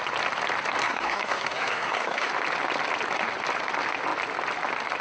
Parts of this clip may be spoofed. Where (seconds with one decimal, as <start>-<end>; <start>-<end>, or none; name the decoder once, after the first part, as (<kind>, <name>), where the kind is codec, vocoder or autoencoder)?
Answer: 0.8-2.3 (codec, SNAC)